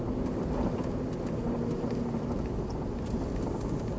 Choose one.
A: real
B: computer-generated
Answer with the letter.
A